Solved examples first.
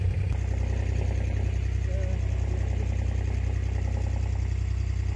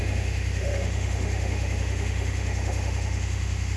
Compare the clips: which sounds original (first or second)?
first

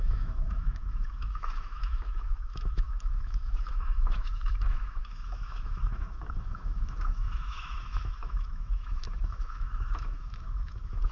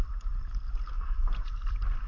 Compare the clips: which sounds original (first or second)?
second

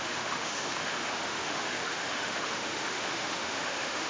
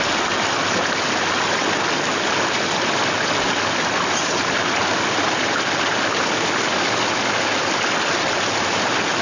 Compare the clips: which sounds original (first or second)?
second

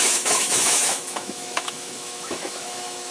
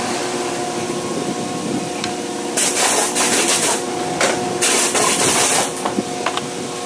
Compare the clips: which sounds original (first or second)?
second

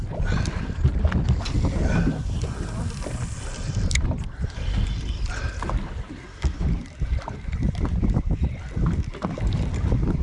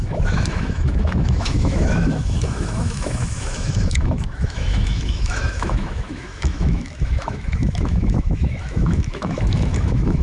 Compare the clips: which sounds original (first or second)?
first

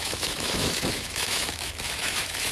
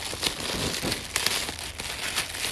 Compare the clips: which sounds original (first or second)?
second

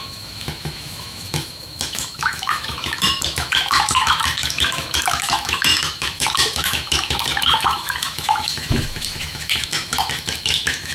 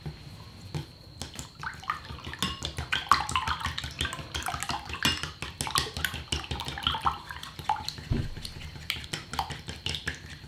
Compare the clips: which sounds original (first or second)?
second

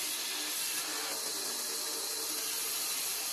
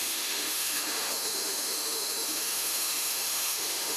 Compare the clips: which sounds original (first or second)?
first